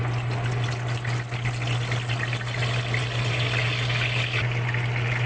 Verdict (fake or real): real